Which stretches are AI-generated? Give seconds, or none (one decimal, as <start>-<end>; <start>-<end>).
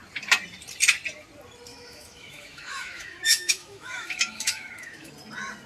1.7-5.1